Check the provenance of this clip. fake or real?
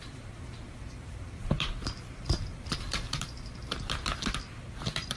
fake